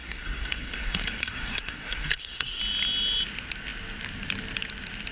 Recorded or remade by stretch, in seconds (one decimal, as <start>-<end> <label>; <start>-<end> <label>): 0.0-2.6 remade; 2.6-5.1 recorded